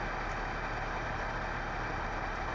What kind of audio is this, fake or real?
real